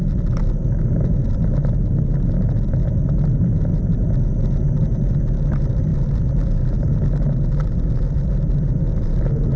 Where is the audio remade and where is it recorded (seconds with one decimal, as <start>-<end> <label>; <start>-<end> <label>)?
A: 0.0-9.6 recorded